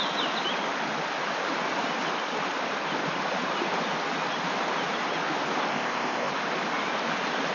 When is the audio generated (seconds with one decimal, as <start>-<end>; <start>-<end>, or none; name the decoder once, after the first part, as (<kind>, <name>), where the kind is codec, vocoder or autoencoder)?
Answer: 5.7-6.3 (codec, ZipCodec)